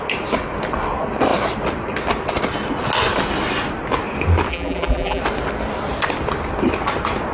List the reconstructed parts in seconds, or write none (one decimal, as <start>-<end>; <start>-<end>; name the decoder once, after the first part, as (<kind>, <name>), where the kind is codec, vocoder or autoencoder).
4.5-5.2 (vocoder, BigVGAN v2)